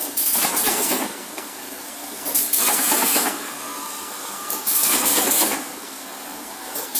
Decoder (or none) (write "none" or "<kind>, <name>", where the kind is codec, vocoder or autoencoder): codec, SNAC